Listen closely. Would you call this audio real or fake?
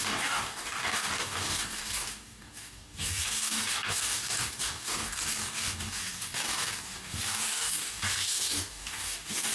fake